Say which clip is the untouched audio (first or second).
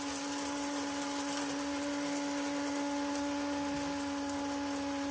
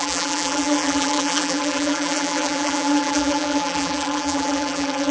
first